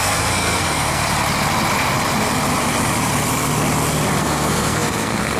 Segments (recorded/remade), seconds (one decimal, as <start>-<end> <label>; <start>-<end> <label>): 0.0-1.0 remade; 1.0-4.2 recorded; 4.2-5.4 remade